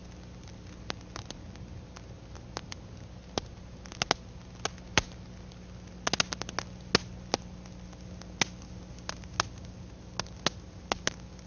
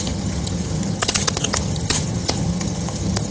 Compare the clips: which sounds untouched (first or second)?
first